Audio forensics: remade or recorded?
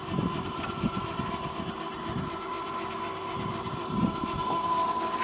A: remade